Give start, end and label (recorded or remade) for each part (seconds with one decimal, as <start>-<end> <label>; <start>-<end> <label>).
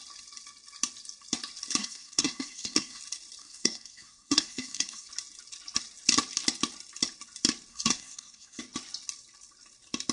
0.0-1.8 recorded; 1.8-3.0 remade; 3.0-3.4 recorded; 3.4-5.1 remade; 5.1-7.7 recorded; 7.7-8.6 remade; 8.6-10.1 recorded